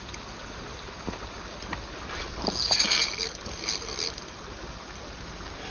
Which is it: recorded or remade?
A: recorded